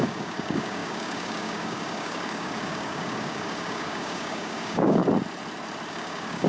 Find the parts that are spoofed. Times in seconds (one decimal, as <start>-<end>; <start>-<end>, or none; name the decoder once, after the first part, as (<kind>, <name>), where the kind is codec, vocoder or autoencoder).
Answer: 0.0-5.0 (codec, DAC); 5.9-6.5